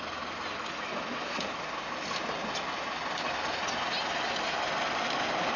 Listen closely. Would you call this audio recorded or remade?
recorded